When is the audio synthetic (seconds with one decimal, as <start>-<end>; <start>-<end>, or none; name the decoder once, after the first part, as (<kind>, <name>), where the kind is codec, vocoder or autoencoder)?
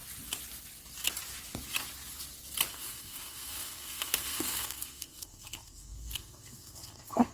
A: 2.7-7.3 (codec, SNAC)